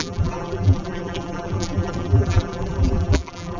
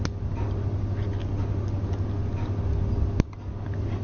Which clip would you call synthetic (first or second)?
first